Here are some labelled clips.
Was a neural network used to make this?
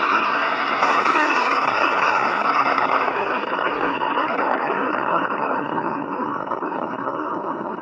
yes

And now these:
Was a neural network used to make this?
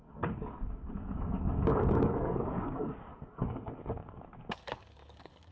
yes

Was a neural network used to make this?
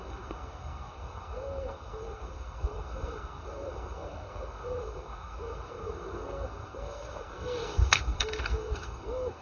yes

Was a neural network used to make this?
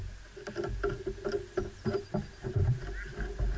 no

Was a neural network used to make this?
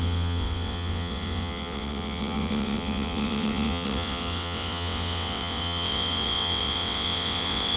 yes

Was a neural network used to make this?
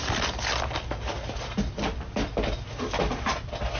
no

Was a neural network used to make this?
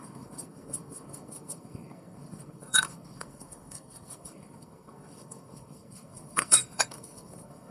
yes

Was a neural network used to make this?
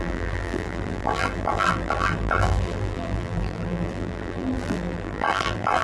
yes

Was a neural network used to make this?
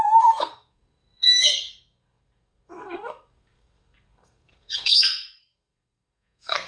yes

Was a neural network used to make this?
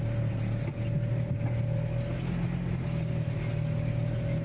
no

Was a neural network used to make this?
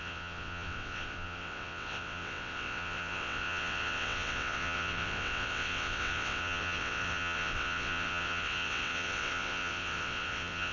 yes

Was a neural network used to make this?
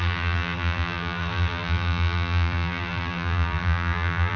yes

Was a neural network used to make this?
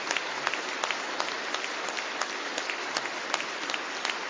no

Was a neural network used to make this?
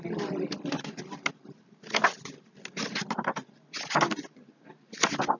no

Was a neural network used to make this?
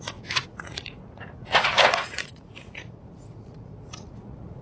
yes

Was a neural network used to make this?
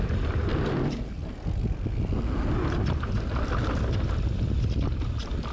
no